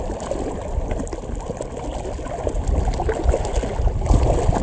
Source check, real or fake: real